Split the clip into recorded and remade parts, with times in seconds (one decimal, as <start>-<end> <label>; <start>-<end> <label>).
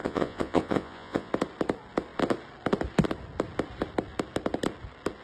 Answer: 0.0-1.3 remade; 1.3-5.2 recorded